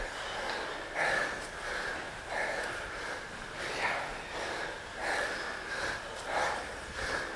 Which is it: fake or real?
real